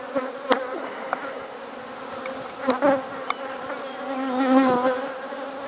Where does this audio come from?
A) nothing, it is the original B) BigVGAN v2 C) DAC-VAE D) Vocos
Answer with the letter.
A